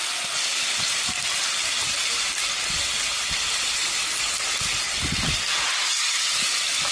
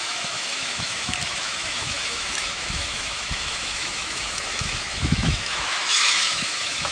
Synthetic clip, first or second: second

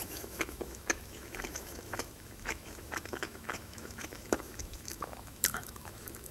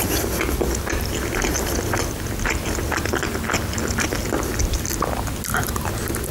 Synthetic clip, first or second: first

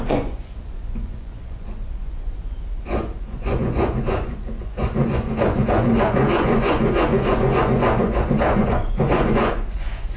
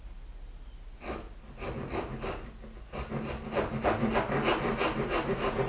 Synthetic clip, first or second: first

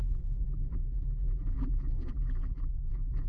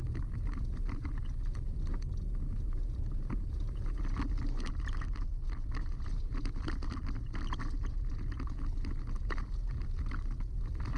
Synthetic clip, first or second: first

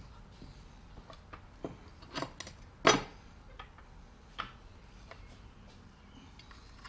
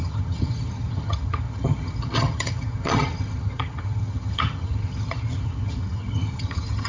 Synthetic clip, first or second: second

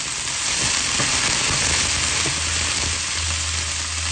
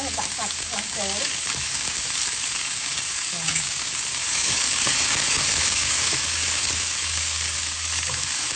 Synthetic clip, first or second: second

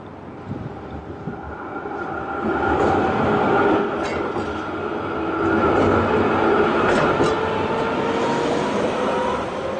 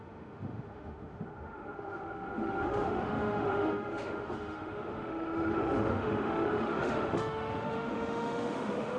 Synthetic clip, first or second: second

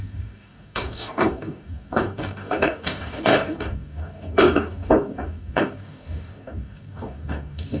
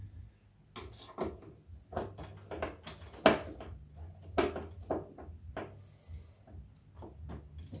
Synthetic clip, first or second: first